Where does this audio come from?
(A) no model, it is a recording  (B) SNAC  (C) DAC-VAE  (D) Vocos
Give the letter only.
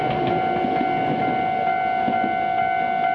A